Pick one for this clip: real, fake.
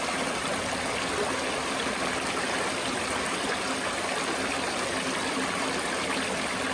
real